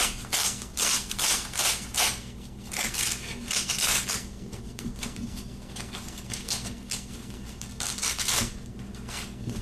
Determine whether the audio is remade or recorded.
remade